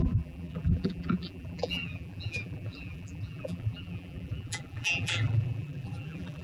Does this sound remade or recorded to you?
remade